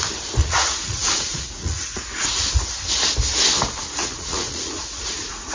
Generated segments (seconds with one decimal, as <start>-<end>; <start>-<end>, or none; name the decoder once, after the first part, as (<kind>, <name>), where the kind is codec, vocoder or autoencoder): 0.4-2.4 (vocoder, Vocos); 3.8-5.5